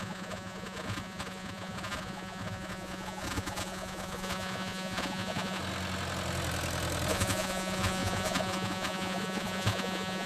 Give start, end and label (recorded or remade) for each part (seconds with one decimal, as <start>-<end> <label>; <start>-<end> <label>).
0.0-5.6 remade; 5.6-7.1 recorded; 7.1-10.3 remade